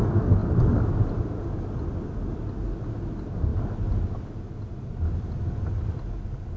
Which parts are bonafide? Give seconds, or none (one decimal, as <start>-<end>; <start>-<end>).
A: 0.0-6.6